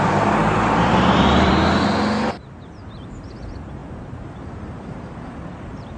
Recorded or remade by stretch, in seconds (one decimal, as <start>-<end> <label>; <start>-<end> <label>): 0.0-1.5 remade; 1.5-2.8 recorded; 2.8-6.0 remade